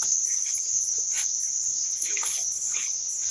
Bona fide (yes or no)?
no